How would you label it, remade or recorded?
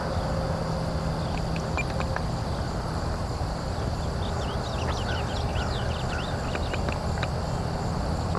recorded